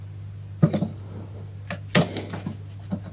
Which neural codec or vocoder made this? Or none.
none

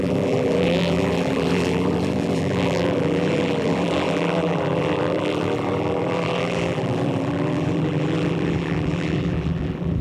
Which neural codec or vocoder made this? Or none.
vocoder, BigVGAN v2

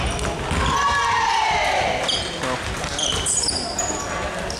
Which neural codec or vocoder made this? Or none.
none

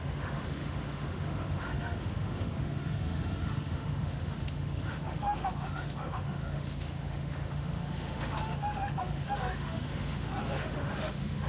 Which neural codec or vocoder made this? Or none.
autoencoder, DAC-VAE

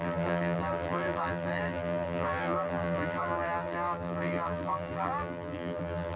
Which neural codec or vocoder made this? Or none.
vocoder, BigVGAN v2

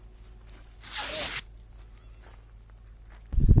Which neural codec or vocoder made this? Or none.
none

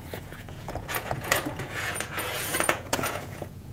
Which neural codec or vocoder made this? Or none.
vocoder, Vocos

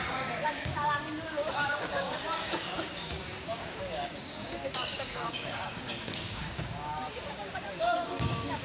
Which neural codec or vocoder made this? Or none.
codec, DAC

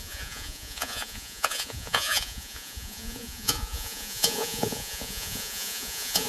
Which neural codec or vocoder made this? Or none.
vocoder, Vocos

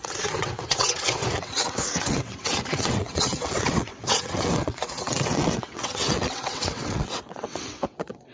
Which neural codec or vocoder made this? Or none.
vocoder, WaveNeXt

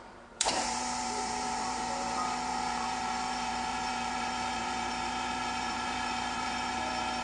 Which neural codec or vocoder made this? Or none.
vocoder, BigVGAN v2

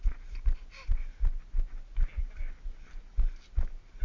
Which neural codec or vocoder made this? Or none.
none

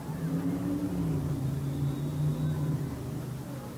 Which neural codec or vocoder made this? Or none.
none